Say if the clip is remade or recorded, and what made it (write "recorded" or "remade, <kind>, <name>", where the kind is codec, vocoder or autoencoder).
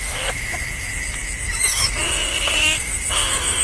remade, autoencoder, DAC-VAE